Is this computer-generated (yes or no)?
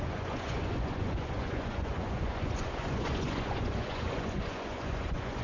yes